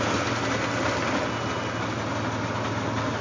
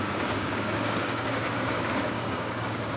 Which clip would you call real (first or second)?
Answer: first